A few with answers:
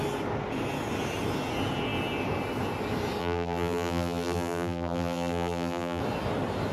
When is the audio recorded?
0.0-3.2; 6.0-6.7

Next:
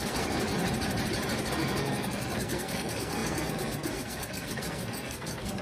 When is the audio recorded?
0.5-1.5